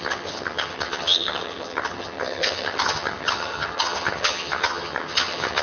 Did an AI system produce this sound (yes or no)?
yes